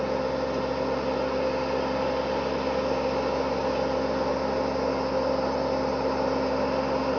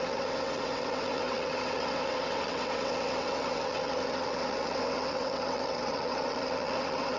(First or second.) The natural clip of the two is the first